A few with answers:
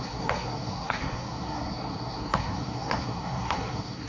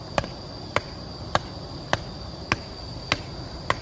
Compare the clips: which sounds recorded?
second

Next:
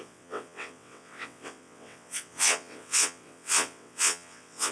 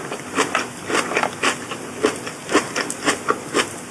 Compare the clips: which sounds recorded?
second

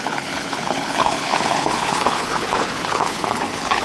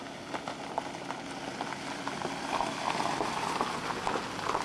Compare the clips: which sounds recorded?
second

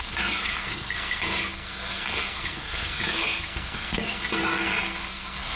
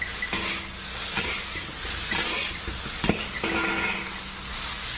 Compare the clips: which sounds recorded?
second